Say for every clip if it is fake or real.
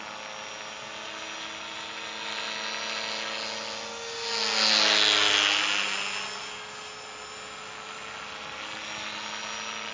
real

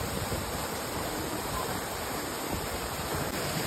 fake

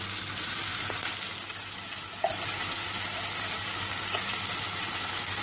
real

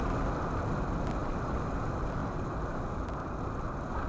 real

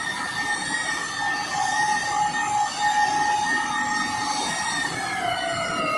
real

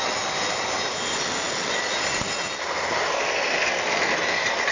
real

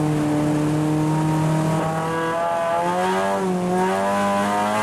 real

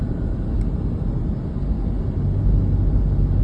real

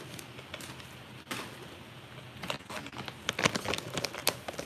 real